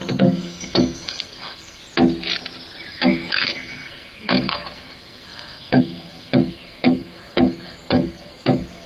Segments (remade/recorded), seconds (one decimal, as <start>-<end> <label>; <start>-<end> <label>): 0.0-1.8 remade; 1.8-2.9 recorded; 2.9-8.9 remade